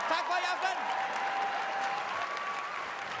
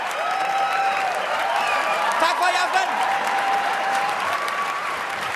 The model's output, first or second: second